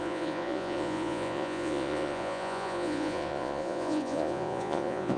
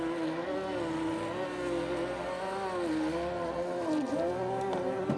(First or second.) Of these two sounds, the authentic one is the second